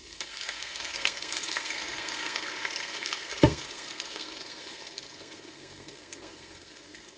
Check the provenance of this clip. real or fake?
fake